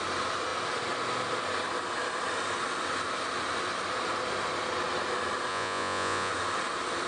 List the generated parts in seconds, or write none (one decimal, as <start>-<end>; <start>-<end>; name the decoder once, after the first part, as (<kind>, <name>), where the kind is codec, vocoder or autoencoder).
5.5-6.3 (vocoder, Vocos)